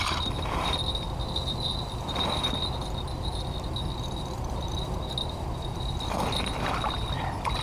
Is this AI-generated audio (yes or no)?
no